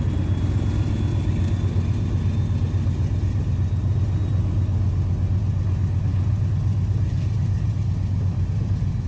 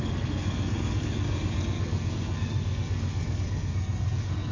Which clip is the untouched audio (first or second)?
first